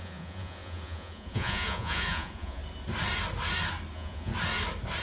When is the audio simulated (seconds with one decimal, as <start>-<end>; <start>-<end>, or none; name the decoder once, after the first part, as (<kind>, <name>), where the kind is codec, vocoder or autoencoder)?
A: 0.0-2.6 (vocoder, Vocos); 3.9-4.3